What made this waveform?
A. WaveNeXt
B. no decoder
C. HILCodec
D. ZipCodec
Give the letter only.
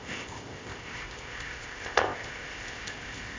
D